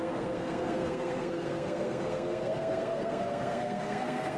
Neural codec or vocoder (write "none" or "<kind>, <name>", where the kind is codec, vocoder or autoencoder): codec, SNAC